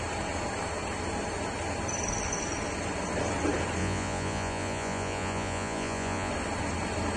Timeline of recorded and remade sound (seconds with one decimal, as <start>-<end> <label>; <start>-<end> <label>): 0.0-3.8 recorded; 3.8-6.3 remade; 6.3-7.2 recorded